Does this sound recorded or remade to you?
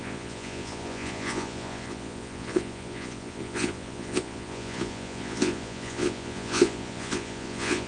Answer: remade